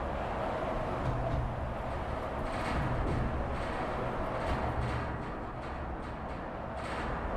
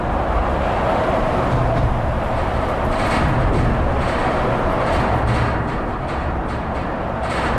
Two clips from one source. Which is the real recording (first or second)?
first